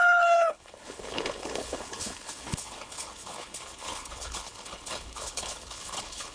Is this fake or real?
fake